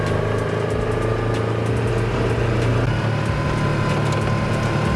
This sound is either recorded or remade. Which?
recorded